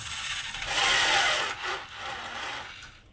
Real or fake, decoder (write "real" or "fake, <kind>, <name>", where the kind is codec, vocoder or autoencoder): real